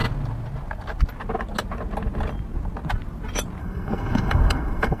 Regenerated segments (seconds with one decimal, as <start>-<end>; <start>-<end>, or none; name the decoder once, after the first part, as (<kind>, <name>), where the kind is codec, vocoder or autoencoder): 3.6-5.0 (codec, SNAC)